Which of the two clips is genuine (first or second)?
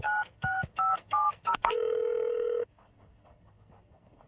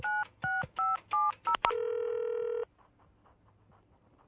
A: second